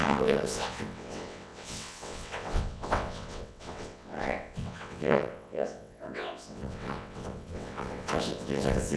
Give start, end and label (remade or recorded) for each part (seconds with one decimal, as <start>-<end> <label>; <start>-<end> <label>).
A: 0.0-9.0 remade